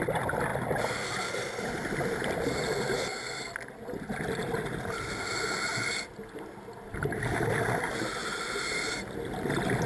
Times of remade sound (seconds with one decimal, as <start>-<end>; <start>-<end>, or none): none